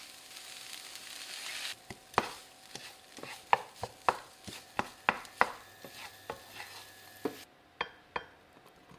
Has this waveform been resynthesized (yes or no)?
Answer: no